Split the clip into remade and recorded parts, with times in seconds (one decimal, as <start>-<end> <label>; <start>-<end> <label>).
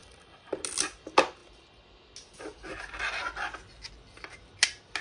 0.0-0.6 remade; 0.6-5.0 recorded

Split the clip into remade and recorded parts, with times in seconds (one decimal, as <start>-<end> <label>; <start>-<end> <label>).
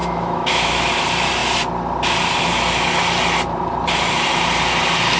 0.0-0.9 remade; 0.9-5.2 recorded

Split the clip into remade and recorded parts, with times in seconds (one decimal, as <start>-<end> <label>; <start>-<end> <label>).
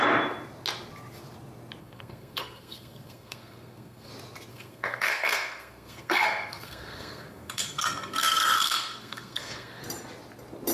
0.0-1.8 recorded; 1.8-4.1 remade; 4.1-4.5 recorded; 4.5-9.8 remade; 9.8-10.7 recorded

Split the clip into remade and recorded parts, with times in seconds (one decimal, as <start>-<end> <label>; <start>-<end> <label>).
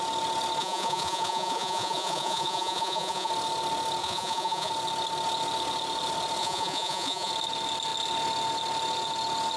0.0-0.6 recorded; 0.6-3.3 remade; 3.3-4.0 recorded; 4.0-4.7 remade; 4.7-6.4 recorded; 6.4-7.3 remade; 7.3-9.6 recorded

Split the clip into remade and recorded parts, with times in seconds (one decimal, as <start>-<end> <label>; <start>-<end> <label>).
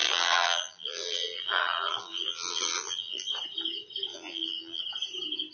0.0-3.3 remade; 3.3-4.1 recorded; 4.1-4.8 remade; 4.8-5.5 recorded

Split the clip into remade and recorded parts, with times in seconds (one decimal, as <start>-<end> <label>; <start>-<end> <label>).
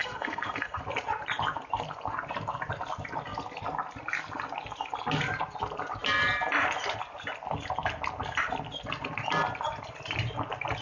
0.0-0.8 remade; 0.8-10.8 recorded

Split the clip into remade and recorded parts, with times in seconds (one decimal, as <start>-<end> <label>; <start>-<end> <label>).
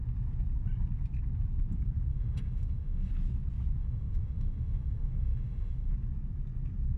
0.0-2.1 recorded; 2.1-3.1 remade; 3.1-3.8 recorded; 3.8-5.9 remade; 5.9-7.0 recorded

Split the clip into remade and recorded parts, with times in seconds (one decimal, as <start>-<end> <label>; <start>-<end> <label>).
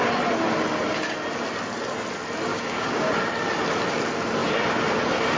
0.0-2.5 recorded; 2.5-3.1 remade; 3.1-5.4 recorded